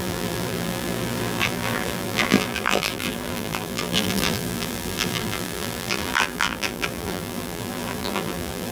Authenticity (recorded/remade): remade